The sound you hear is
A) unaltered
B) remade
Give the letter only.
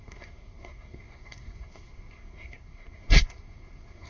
B